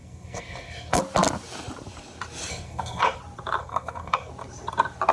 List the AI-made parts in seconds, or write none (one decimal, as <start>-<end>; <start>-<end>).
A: 0.0-1.0; 2.5-3.2; 3.6-4.3